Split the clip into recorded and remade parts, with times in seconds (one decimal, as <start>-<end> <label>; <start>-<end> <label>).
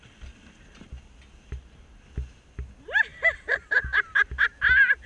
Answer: 0.0-5.1 recorded